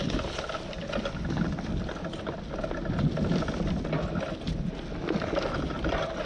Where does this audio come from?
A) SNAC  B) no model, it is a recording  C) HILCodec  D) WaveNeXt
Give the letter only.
B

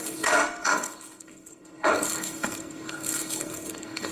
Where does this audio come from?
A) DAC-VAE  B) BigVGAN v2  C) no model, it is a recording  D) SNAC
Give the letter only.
D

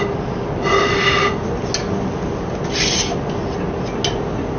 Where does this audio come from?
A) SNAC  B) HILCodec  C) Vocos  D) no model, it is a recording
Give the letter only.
D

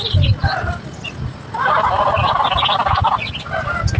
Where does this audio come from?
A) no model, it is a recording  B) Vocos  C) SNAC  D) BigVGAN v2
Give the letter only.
A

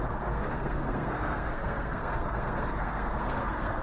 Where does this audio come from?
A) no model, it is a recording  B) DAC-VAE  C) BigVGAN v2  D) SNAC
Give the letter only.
D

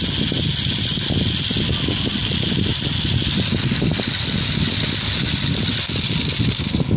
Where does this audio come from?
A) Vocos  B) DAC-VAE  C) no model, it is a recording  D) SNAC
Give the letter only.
C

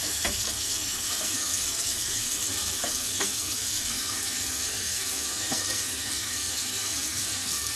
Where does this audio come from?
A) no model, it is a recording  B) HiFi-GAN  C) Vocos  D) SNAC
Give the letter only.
D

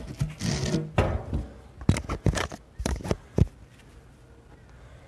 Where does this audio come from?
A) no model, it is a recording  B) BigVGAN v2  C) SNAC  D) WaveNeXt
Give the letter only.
A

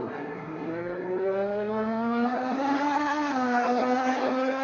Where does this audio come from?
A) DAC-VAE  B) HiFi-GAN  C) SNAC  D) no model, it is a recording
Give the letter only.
C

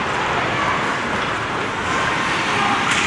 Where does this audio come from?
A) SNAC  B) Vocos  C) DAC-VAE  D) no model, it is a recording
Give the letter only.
D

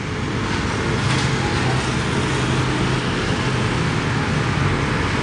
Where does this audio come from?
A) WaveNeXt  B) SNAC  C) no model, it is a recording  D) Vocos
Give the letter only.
C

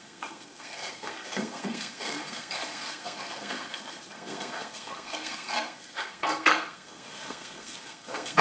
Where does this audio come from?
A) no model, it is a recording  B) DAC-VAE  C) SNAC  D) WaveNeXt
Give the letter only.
C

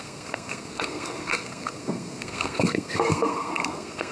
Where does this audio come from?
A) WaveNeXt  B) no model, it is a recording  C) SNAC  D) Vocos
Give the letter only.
C